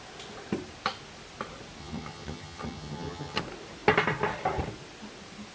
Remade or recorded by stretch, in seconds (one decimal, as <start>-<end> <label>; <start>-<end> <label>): 0.0-1.8 recorded; 1.8-3.4 remade; 3.4-5.5 recorded

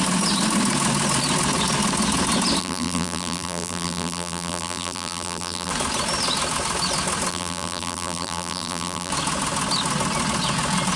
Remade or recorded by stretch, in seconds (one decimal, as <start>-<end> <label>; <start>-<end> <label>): 0.0-2.6 recorded; 2.6-5.7 remade; 5.7-7.3 recorded; 7.3-9.1 remade; 9.1-11.0 recorded

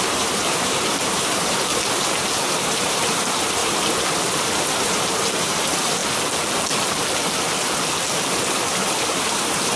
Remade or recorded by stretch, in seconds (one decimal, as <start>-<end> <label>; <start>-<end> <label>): 0.0-1.7 remade; 1.7-2.5 recorded; 2.5-6.0 remade; 6.0-8.3 recorded; 8.3-9.8 remade

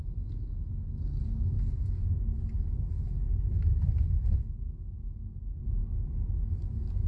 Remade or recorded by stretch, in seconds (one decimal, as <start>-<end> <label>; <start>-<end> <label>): 0.0-7.1 recorded

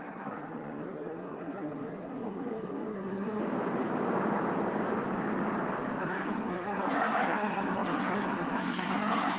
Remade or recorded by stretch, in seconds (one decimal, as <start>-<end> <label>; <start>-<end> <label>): 0.0-3.4 remade; 3.4-6.0 recorded; 6.0-9.4 remade

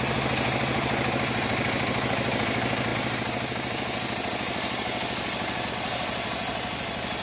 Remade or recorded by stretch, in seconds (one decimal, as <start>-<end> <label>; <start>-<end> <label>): 0.0-7.2 recorded

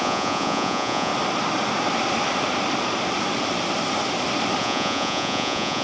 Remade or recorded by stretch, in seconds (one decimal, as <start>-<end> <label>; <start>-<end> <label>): 0.0-1.1 remade; 1.1-4.6 recorded; 4.6-5.8 remade